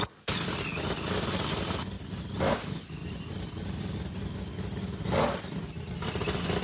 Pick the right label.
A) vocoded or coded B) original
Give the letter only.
B